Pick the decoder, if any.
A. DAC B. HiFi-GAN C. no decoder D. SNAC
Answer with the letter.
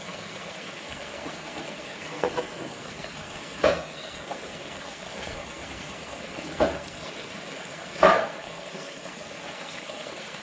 D